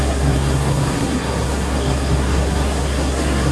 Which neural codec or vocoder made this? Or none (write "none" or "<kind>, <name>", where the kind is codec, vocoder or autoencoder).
codec, SNAC